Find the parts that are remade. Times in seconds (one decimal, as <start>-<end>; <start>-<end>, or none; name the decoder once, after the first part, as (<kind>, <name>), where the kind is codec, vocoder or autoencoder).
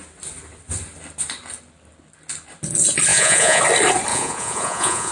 3.1-3.6 (vocoder, Vocos); 4.1-5.1